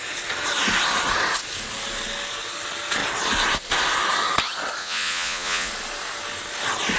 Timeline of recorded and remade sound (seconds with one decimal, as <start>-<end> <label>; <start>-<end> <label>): 0.0-4.8 recorded; 4.8-5.7 remade; 5.7-7.0 recorded